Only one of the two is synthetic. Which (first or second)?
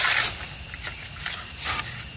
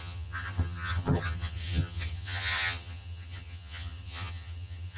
second